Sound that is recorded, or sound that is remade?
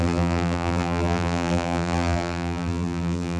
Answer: remade